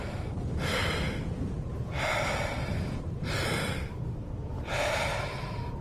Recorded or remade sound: recorded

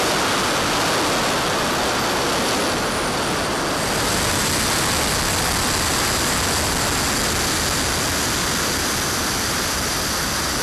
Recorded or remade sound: recorded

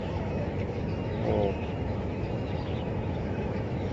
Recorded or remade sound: remade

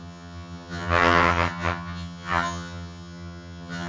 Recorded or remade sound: remade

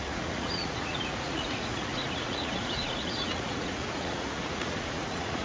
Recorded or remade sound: remade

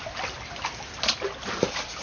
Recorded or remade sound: recorded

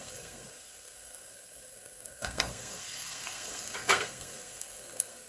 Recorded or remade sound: remade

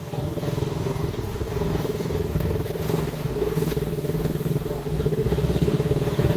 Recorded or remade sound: remade